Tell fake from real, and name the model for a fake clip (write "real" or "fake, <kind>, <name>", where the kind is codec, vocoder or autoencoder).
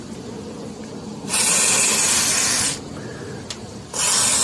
real